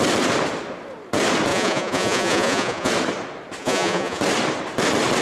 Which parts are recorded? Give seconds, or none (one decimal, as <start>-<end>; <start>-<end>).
0.0-1.5; 2.9-3.6; 4.2-5.2